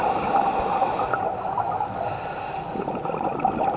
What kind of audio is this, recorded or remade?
recorded